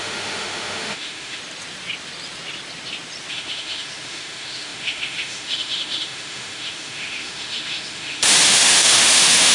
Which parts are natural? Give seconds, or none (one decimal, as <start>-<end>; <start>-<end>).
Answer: 1.4-3.3